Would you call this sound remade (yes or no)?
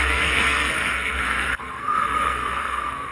yes